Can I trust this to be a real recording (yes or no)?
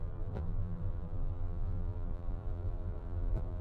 no